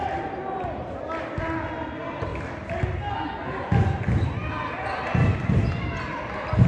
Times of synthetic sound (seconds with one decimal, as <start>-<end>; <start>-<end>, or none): none